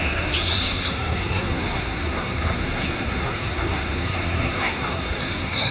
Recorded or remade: remade